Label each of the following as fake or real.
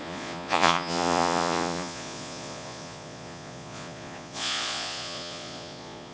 fake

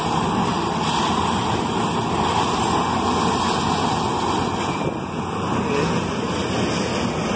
real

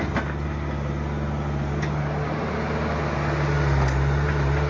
real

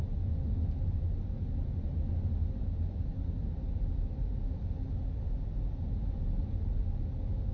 real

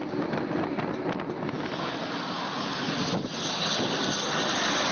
real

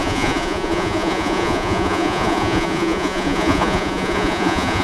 fake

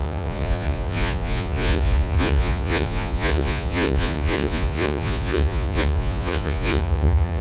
fake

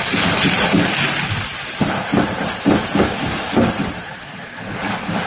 real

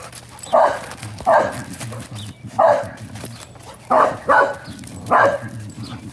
real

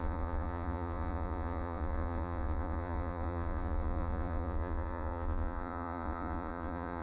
fake